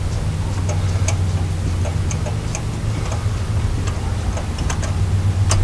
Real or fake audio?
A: real